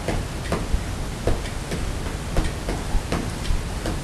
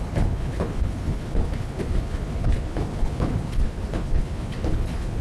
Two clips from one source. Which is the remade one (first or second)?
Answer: second